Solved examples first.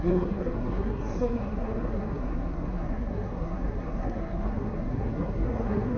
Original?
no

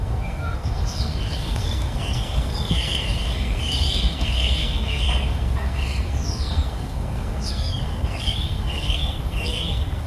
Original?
no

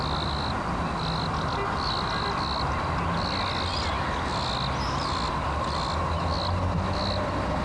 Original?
yes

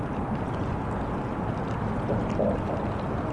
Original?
yes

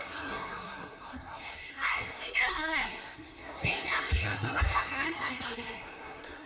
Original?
no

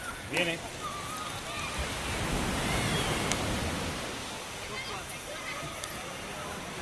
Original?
yes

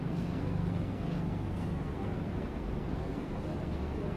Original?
no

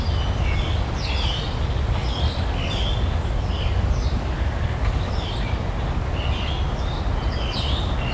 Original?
yes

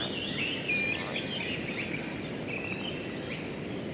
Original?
yes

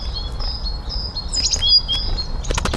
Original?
yes